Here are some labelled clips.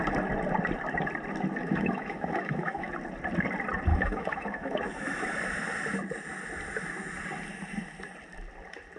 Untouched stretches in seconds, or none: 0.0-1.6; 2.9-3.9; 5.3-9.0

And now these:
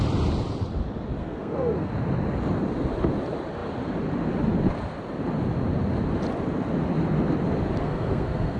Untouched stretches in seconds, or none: 0.0-1.2; 1.9-7.8

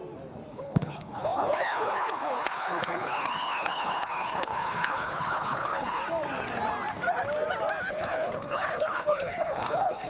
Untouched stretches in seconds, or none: 0.0-0.5; 6.0-7.9

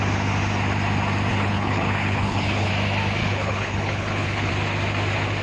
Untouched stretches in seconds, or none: 0.0-1.3; 2.7-3.2; 4.5-5.4

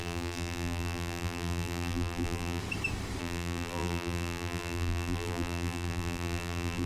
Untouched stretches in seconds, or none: 2.6-3.2